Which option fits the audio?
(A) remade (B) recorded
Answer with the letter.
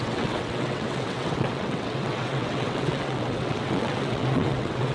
A